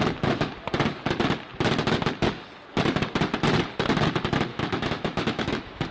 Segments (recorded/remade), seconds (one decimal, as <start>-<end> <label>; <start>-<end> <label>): 0.0-4.5 recorded; 4.5-5.9 remade